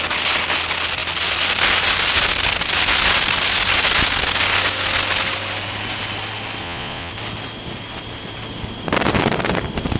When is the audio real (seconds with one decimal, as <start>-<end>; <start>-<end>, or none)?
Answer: 0.0-6.6; 7.1-10.0